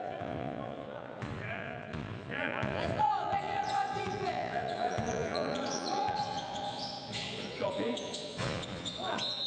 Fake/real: fake